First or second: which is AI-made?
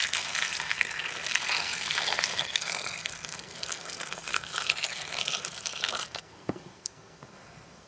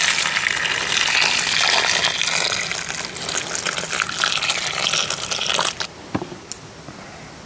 first